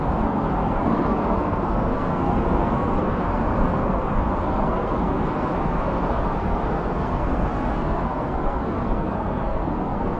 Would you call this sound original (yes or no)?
no